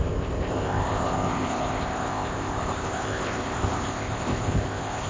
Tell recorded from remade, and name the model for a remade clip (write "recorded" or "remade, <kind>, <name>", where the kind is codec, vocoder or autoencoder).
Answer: remade, codec, ZipCodec